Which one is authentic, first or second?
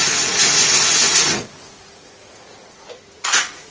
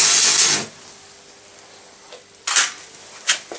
second